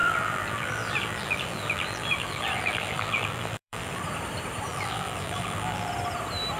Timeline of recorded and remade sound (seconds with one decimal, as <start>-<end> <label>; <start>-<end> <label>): 0.0-4.0 remade; 4.0-4.7 recorded; 4.7-5.9 remade; 5.9-6.6 recorded